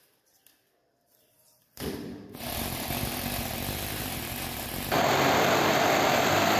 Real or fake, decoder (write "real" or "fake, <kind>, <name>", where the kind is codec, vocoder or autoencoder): fake, vocoder, BigVGAN v2